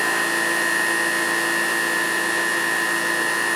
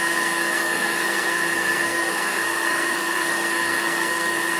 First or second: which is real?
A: first